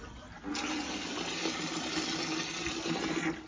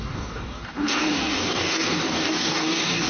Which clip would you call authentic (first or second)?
first